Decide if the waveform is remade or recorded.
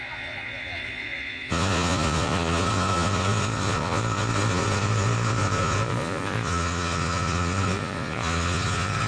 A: remade